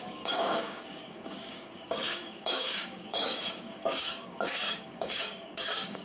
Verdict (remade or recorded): remade